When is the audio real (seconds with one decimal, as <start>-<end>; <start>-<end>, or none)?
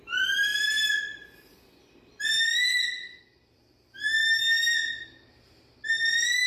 4.2-5.9